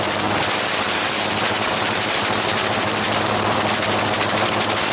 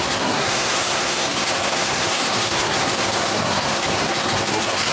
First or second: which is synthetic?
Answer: second